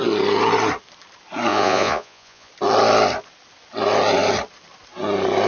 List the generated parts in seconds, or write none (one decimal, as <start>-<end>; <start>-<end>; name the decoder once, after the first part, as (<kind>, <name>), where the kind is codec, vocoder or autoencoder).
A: 1.5-2.5 (vocoder, Vocos)